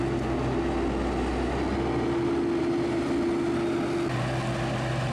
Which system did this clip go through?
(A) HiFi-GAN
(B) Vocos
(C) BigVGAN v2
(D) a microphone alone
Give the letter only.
D